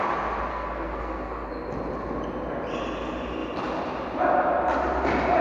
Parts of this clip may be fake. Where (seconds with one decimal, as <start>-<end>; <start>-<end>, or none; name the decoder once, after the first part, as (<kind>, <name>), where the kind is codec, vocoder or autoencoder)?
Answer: 0.5-1.5 (codec, SNAC)

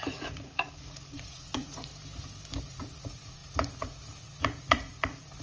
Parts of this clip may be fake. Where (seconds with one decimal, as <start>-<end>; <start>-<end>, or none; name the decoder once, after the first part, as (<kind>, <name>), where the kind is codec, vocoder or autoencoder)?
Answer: 0.0-1.9 (vocoder, Vocos); 2.6-5.4

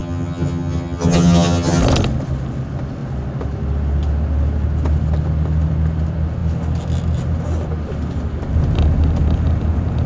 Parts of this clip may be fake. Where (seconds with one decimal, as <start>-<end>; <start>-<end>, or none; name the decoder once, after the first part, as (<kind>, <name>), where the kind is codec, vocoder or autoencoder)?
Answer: 0.0-1.8 (vocoder, HiFi-GAN)

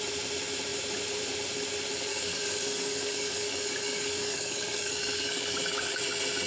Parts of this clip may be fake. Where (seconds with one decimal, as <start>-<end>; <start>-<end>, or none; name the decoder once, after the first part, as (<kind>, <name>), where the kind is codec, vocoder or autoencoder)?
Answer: 2.1-6.0 (codec, DAC)

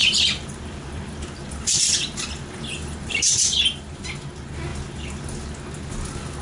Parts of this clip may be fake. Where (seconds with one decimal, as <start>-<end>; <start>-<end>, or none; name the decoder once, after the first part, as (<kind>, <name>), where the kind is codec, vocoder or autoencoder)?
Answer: 0.0-3.8 (vocoder, BigVGAN v2)